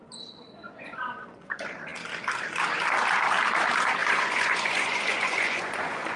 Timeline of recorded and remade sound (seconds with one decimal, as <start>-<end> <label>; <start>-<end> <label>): 0.0-0.6 recorded; 0.6-1.5 remade; 1.5-4.0 recorded; 4.0-6.2 remade